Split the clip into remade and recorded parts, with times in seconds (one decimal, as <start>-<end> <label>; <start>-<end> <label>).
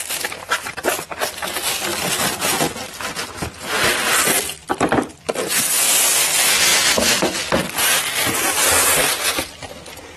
0.0-4.6 recorded; 4.6-5.3 remade; 5.3-10.2 recorded